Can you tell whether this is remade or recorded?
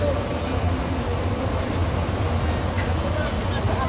recorded